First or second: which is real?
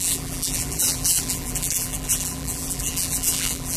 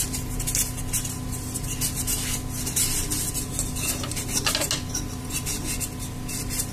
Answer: second